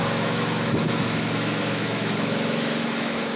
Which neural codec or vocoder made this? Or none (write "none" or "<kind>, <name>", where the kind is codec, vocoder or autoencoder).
autoencoder, DAC-VAE